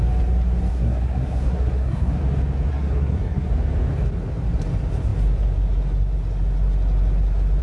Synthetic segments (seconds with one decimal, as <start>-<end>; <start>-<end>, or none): 0.7-2.2; 2.7-3.5